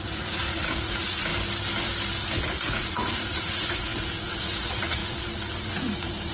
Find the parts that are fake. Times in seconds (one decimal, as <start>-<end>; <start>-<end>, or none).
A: 0.0-1.3; 2.1-6.3